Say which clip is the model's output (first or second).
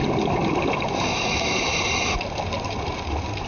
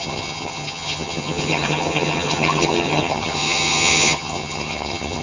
second